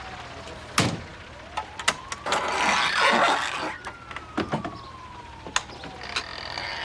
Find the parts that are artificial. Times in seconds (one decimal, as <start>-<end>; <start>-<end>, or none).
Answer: none